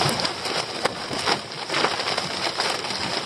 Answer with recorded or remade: recorded